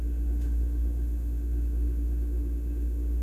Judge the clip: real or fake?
fake